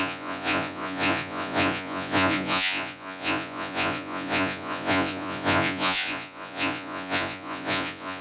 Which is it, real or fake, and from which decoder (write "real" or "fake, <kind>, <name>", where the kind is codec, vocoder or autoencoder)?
fake, vocoder, Vocos